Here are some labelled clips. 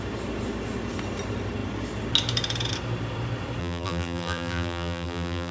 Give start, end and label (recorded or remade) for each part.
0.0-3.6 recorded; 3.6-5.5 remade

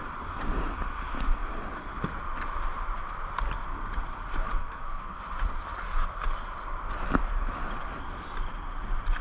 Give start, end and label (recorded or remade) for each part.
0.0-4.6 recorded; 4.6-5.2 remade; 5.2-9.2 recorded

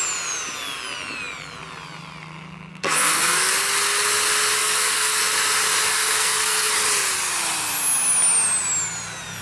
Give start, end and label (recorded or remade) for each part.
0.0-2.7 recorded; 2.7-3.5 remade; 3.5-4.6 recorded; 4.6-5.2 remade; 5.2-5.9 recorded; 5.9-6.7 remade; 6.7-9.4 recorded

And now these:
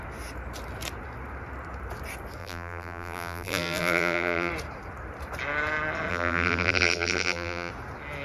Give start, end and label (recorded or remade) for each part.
0.0-2.4 recorded; 2.4-4.5 remade; 4.5-6.1 recorded; 6.1-7.7 remade; 7.7-8.2 recorded